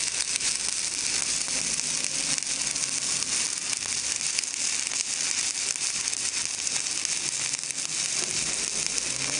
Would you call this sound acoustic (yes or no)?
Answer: yes